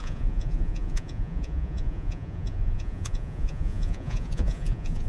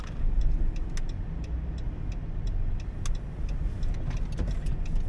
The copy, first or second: first